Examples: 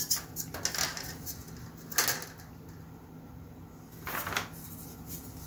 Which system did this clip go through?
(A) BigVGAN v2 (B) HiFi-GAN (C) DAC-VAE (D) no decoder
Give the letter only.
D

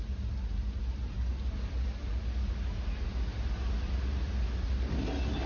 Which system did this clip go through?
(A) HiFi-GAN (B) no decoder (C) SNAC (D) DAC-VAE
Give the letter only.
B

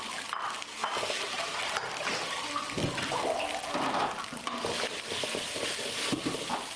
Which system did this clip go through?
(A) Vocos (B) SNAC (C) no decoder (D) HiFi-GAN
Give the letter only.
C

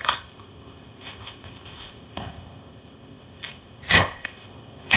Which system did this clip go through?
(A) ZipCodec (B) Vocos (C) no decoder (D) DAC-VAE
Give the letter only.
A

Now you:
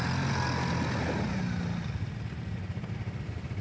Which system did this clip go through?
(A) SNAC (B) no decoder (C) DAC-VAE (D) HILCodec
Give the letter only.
B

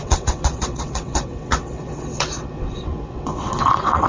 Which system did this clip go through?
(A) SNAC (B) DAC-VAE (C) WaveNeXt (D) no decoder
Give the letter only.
C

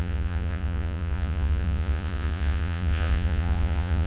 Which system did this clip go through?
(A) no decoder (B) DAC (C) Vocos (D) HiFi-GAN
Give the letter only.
C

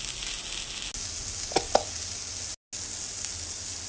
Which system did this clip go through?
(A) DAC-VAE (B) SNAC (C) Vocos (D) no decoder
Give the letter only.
D